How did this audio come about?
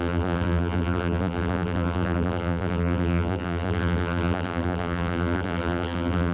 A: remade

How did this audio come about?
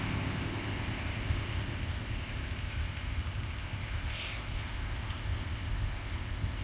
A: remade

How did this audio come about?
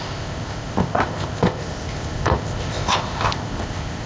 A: remade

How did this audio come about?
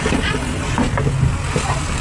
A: recorded